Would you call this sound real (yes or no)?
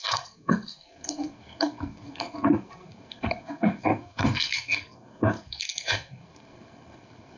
no